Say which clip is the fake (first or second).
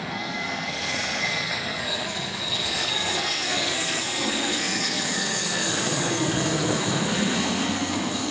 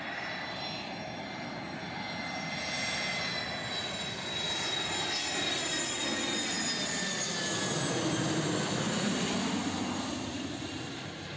first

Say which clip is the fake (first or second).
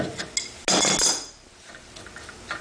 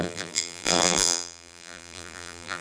second